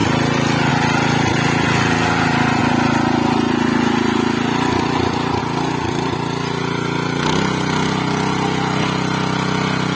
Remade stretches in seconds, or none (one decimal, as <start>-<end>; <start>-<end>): none